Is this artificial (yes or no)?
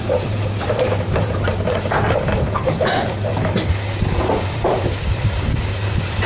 yes